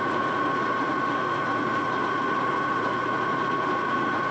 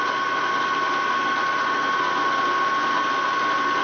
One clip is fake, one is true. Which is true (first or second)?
second